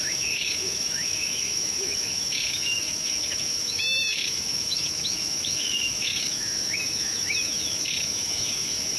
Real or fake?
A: fake